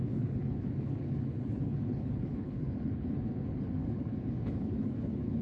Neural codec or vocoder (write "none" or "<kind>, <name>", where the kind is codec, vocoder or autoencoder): codec, HILCodec